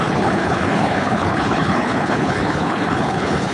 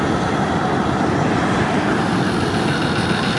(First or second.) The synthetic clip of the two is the first